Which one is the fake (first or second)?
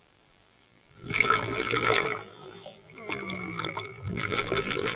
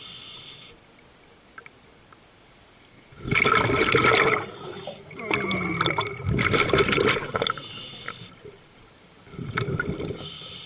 first